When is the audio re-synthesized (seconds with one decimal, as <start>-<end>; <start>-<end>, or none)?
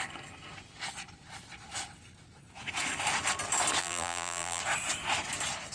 3.8-4.6